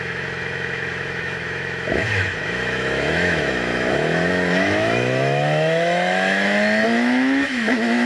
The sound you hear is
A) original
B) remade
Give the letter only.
B